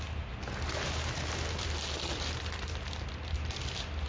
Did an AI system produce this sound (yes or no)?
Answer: no